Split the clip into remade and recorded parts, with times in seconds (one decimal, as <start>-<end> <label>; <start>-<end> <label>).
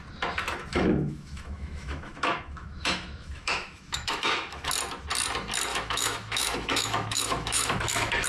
0.0-0.7 recorded; 0.7-4.7 remade; 4.7-5.7 recorded; 5.7-8.3 remade